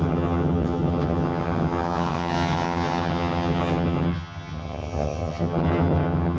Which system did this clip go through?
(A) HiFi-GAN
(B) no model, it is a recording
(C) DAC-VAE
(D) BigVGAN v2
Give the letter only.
A